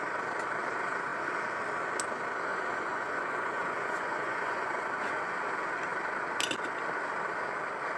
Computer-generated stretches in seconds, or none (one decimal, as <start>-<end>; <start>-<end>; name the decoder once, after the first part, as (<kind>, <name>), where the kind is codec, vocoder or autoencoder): 2.5-5.4 (vocoder, Vocos)